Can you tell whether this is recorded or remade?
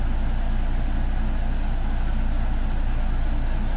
recorded